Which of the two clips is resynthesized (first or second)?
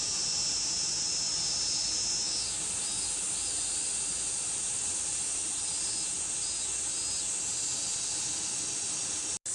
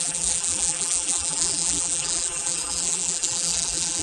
second